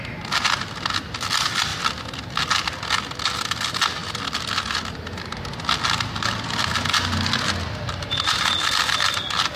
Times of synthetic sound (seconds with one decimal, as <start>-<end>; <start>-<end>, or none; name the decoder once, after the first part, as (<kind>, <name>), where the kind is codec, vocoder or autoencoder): none